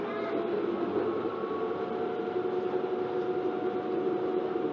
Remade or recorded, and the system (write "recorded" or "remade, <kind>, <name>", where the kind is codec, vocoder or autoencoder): recorded